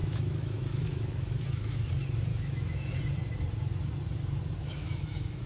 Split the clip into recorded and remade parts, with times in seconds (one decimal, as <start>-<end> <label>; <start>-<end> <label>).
0.0-1.9 remade; 1.9-2.3 recorded; 2.3-3.0 remade; 3.0-4.6 recorded; 4.6-5.5 remade